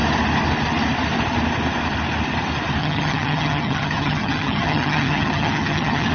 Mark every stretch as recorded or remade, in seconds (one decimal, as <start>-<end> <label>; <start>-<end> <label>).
0.0-2.8 recorded; 2.8-6.1 remade